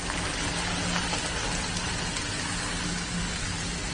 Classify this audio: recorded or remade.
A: recorded